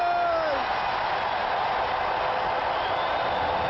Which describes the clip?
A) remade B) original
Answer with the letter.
B